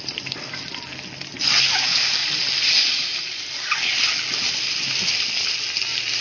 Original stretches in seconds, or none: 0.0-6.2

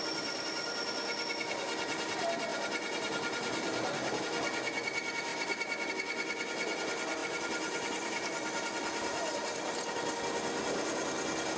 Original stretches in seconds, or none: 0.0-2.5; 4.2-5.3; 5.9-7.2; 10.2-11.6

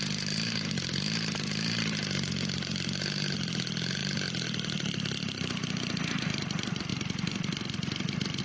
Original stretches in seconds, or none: 0.0-8.4